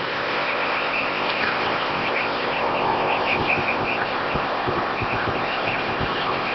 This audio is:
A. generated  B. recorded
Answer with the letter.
A